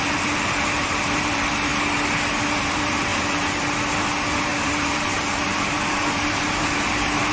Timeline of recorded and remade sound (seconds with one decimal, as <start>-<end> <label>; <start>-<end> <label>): 0.0-1.7 remade; 1.7-2.4 recorded; 2.4-7.3 remade